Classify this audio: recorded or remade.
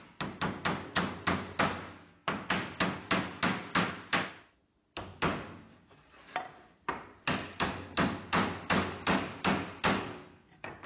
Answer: recorded